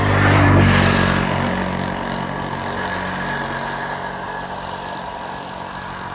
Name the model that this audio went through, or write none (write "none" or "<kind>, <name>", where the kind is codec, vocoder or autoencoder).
none